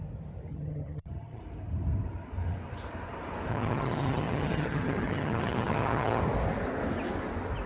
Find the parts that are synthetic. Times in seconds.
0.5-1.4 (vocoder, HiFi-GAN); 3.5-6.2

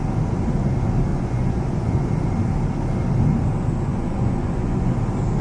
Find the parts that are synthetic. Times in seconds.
1.1-2.1 (vocoder, Vocos); 3.9-4.9